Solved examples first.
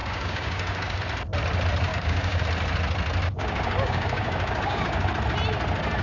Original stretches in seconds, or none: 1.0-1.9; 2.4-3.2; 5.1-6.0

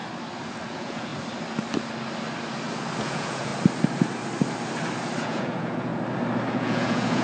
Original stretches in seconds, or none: 0.0-0.7; 1.1-3.0; 3.5-5.2; 5.9-6.5

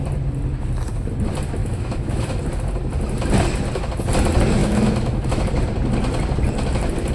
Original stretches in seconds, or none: 0.0-1.6; 2.3-4.6; 5.5-7.1

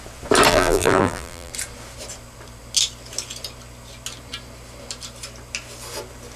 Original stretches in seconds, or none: 0.0-0.5; 1.5-6.4